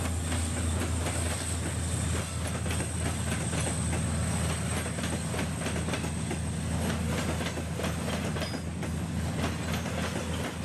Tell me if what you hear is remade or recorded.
recorded